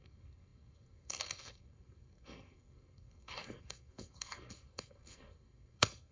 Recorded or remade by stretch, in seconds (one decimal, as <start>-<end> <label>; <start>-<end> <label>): 0.0-6.1 remade